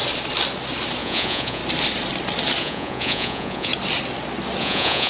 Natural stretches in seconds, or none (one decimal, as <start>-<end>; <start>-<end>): 0.0-1.0; 1.6-2.6; 3.7-4.6